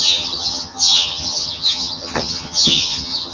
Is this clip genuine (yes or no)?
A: no